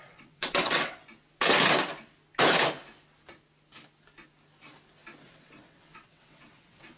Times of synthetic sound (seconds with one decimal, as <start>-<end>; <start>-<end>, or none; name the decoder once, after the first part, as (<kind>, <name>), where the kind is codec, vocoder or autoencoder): 0.0-1.0 (vocoder, WaveNeXt); 5.2-7.0

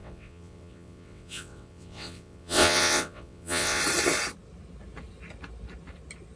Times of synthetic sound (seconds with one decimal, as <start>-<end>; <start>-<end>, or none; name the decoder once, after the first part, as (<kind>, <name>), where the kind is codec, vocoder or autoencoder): 0.0-3.8 (vocoder, WaveNeXt)

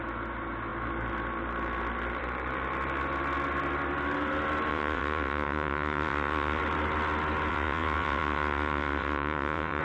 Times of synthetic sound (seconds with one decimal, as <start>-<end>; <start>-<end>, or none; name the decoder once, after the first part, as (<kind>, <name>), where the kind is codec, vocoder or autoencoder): 4.7-6.6 (vocoder, WaveNeXt); 7.5-9.8

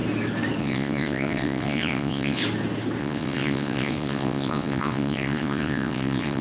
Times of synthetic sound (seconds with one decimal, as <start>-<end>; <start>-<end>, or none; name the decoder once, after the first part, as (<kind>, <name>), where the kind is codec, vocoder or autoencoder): 0.6-2.4 (vocoder, WaveNeXt); 3.0-6.4

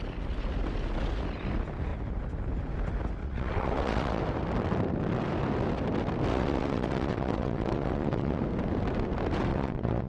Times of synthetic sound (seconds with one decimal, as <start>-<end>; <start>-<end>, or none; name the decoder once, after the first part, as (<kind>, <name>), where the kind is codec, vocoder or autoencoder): 3.2-4.2 (vocoder, WaveNeXt); 6.3-8.4; 9.5-10.1

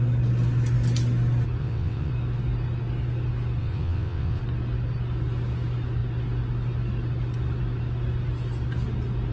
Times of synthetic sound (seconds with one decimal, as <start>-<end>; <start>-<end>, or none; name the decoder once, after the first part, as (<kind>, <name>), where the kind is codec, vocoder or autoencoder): 1.6-2.1 (vocoder, WaveNeXt); 3.6-4.4

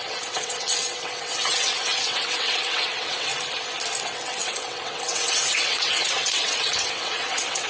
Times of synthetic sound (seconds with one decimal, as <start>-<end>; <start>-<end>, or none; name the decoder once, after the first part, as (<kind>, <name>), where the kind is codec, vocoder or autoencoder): 0.0-3.3 (vocoder, WaveNeXt); 4.0-7.7